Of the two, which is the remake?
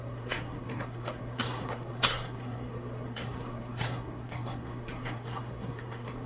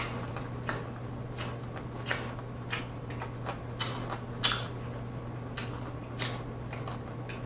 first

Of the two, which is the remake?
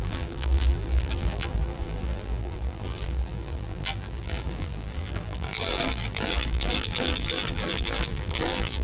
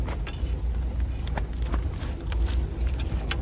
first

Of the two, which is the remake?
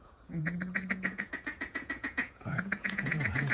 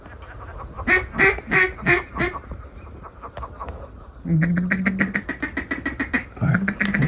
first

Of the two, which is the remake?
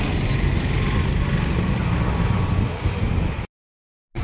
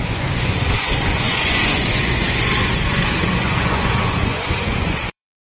second